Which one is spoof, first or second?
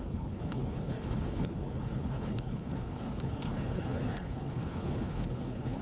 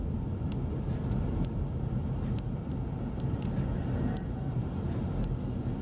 first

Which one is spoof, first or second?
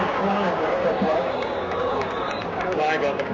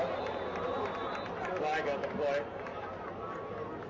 first